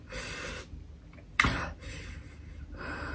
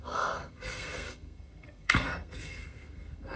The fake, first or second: second